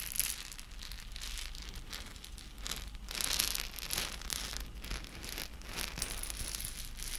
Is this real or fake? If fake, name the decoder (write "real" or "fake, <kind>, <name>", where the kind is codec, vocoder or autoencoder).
real